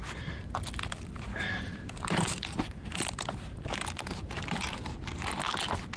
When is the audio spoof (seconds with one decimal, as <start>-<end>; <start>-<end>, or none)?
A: 1.3-4.9